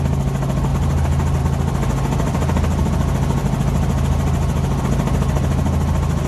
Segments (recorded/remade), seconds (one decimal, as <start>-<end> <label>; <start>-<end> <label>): 0.0-6.3 recorded